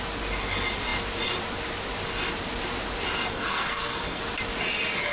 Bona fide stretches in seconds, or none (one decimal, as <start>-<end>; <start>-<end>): 0.0-3.3; 4.2-5.1